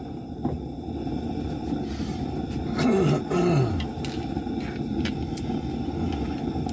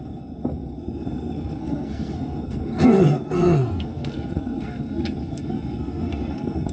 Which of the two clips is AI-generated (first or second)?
second